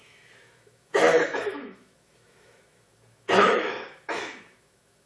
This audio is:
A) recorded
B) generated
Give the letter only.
B